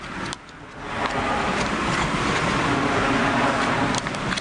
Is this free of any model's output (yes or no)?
yes